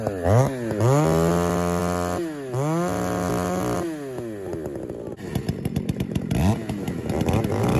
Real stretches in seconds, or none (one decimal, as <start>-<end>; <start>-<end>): 0.0-7.8